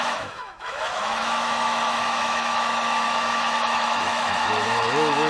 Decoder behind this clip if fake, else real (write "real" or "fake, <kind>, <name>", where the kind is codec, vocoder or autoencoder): fake, autoencoder, DAC-VAE